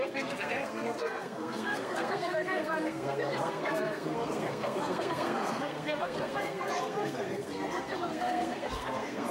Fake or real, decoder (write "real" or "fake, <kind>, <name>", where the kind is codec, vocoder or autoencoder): fake, codec, SNAC